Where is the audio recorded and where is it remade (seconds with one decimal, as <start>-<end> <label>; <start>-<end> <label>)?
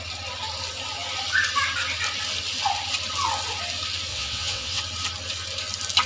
0.0-4.1 recorded; 4.1-4.8 remade; 4.8-6.1 recorded